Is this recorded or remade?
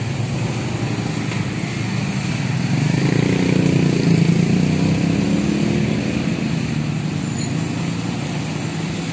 recorded